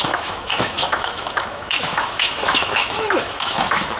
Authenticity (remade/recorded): remade